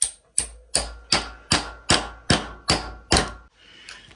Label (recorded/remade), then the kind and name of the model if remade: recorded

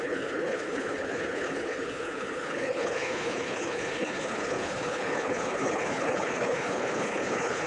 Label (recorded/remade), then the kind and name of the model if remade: remade, codec, HILCodec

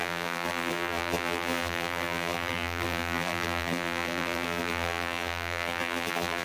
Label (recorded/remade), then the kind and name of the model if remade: remade, vocoder, BigVGAN v2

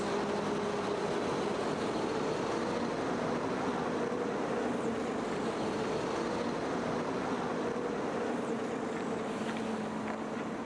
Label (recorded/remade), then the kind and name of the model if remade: recorded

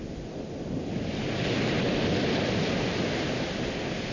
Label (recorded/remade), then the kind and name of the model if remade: recorded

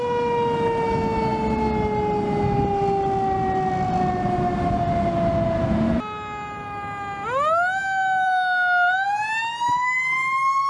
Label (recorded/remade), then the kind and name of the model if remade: recorded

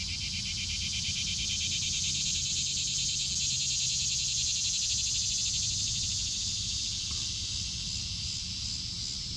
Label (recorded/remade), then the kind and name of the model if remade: recorded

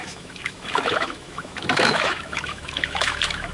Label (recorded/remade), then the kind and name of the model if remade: remade, autoencoder, DAC-VAE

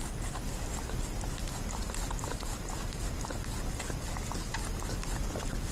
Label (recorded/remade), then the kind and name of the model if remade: recorded